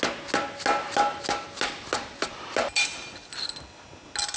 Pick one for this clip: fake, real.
real